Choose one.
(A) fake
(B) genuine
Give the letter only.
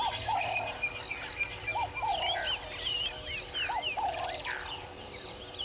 B